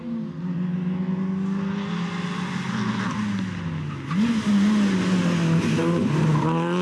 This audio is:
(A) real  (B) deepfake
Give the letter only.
A